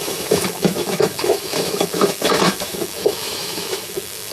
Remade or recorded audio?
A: remade